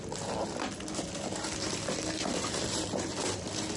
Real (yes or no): no